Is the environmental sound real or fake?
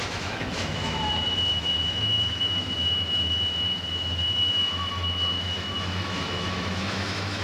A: fake